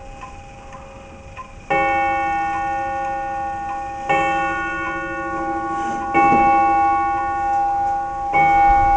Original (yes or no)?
yes